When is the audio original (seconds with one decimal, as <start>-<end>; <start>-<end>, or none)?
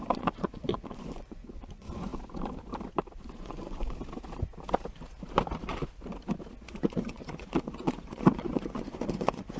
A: 2.1-3.3; 3.8-6.6